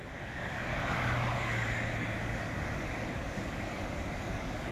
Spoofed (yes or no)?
yes